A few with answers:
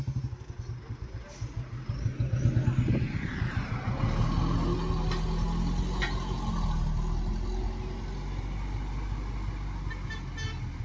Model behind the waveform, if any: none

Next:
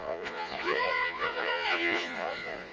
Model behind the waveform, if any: vocoder, Vocos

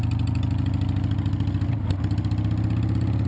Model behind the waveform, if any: none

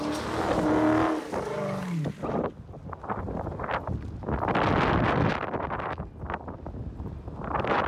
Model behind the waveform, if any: none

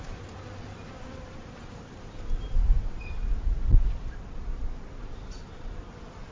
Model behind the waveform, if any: none